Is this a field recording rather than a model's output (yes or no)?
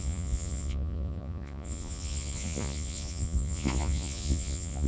no